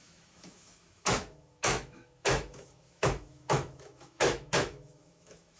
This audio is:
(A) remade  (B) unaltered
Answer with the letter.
A